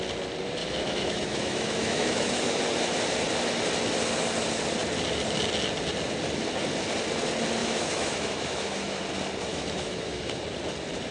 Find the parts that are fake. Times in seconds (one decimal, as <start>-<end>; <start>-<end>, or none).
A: 0.6-2.6; 7.6-9.0; 9.5-10.4